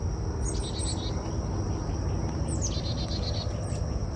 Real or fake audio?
real